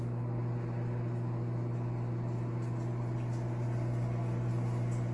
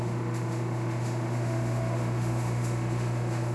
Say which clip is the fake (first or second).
second